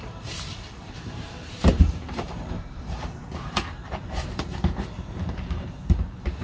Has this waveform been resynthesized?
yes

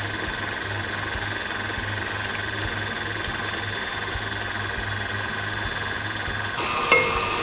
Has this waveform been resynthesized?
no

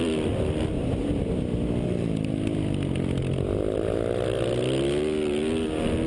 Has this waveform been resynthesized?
no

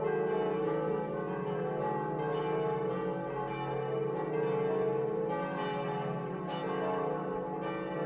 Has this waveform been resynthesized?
no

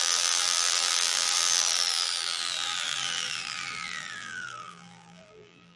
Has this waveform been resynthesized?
yes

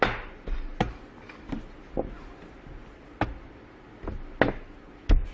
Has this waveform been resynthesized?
no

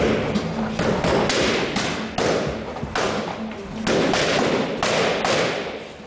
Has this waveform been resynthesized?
no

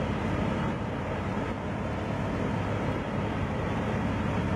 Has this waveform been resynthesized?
yes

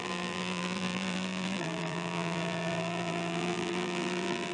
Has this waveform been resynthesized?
yes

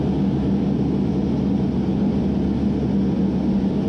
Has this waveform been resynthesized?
no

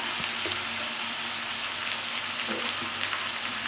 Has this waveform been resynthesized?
no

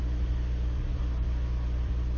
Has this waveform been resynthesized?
no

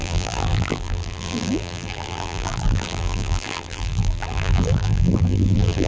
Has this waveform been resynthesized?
yes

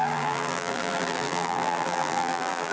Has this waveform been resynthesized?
yes